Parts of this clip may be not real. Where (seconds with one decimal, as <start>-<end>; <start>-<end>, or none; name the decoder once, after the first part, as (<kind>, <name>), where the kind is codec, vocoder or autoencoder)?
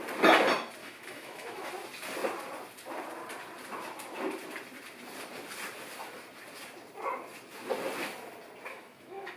0.8-1.7 (autoencoder, DAC-VAE); 8.7-9.4